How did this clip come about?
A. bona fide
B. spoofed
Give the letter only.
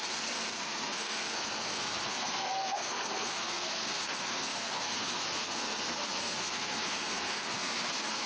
B